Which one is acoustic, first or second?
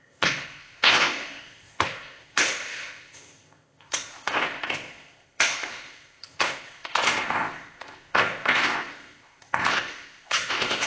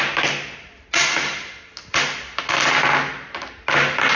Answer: second